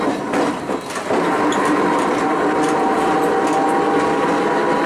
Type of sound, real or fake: real